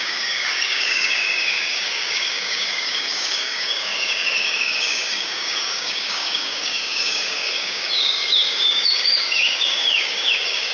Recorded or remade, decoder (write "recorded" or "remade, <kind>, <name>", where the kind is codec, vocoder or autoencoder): remade, codec, DAC